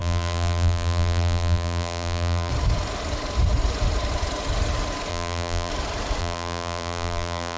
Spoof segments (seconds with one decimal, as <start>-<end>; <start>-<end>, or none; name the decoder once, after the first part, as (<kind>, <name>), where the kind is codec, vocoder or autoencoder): 0.0-2.5 (vocoder, BigVGAN v2); 5.1-5.7; 6.2-7.6